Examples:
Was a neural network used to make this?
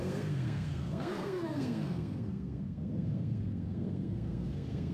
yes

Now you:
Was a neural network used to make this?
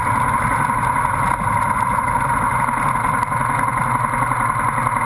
no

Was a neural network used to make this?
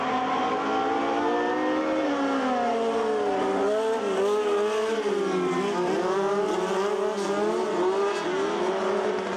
no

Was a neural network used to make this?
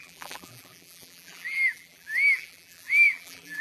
yes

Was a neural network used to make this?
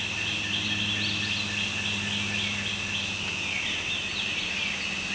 no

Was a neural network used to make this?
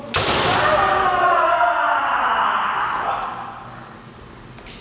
no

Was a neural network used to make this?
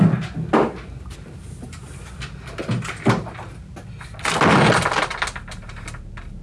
no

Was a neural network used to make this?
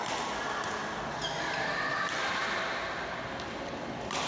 no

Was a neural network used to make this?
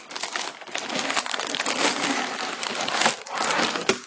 no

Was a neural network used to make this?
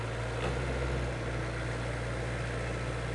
no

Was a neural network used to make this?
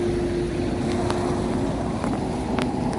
no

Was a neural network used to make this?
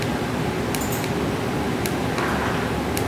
no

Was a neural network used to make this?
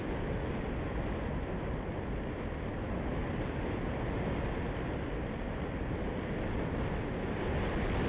no